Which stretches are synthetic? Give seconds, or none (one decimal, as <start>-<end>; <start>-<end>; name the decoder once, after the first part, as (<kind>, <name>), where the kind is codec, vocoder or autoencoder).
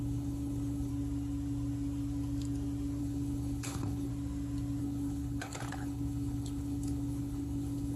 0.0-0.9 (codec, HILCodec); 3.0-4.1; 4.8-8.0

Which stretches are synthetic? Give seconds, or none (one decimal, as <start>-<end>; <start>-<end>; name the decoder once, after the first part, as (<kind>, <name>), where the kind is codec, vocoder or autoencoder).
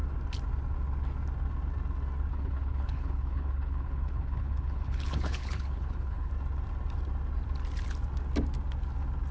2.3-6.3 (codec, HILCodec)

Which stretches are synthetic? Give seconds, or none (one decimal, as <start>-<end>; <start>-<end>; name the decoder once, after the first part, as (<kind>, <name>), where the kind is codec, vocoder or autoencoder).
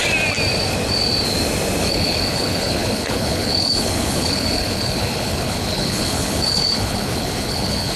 1.8-8.0 (codec, HILCodec)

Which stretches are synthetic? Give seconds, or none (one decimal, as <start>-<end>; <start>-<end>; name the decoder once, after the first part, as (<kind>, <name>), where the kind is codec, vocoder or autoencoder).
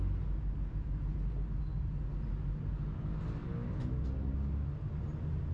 none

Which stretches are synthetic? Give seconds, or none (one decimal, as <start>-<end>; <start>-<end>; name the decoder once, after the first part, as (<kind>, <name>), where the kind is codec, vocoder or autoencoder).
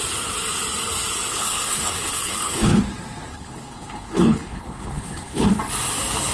1.3-2.8 (codec, HILCodec); 3.3-5.6